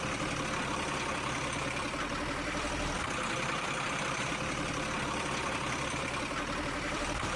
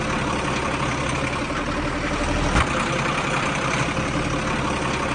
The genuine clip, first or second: second